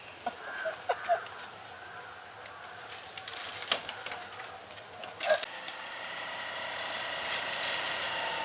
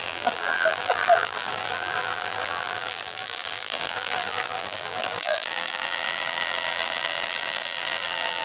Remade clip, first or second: second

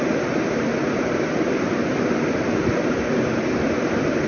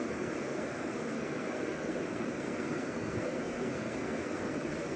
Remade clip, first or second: second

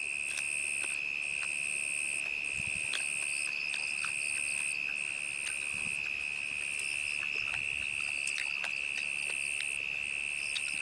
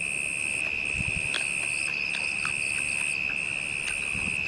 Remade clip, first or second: second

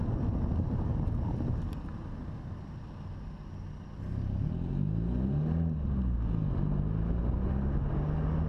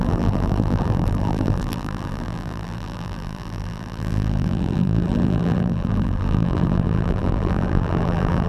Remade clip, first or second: second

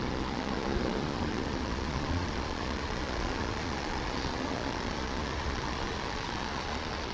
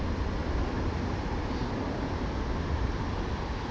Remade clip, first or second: first